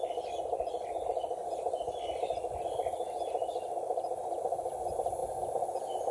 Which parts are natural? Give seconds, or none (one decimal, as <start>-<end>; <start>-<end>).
5.2-6.1